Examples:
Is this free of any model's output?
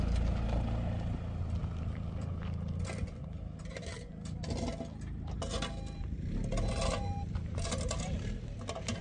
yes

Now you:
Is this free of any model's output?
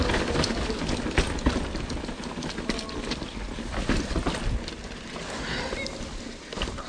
yes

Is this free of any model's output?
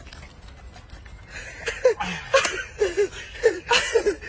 yes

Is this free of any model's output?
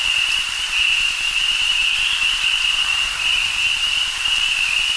no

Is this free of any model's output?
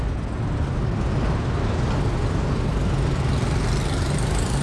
yes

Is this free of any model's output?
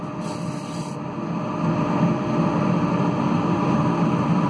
yes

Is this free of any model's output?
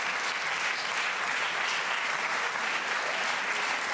yes